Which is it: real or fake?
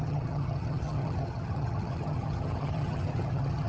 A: fake